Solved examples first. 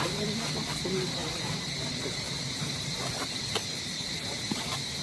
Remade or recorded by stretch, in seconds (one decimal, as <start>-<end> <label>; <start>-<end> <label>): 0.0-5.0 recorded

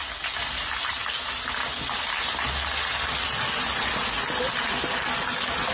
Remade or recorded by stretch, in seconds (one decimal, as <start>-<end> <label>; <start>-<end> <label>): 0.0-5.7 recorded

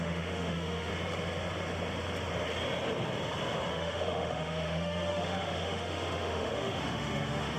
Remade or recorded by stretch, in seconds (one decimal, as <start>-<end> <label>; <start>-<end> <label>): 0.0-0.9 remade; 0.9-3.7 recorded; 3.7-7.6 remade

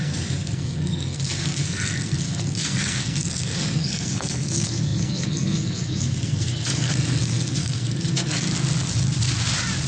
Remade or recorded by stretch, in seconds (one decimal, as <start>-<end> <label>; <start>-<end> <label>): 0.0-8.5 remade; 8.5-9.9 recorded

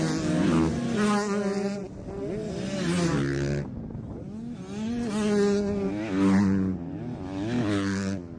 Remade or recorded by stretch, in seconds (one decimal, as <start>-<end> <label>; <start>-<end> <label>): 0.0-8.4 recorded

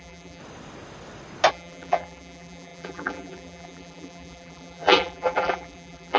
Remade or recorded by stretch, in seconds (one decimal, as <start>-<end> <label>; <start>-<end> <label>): 0.0-0.4 remade; 0.4-1.5 recorded; 1.5-6.2 remade